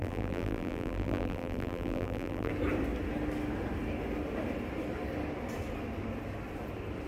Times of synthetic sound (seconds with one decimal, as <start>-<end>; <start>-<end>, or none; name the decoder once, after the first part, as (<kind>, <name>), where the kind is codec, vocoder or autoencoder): 0.0-2.5 (vocoder, BigVGAN v2)